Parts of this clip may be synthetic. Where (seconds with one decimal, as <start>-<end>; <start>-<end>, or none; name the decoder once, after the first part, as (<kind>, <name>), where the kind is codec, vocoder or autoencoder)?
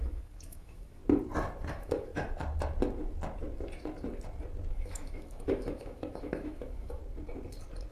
0.0-1.0 (autoencoder, DAC-VAE); 1.7-2.1; 4.7-7.0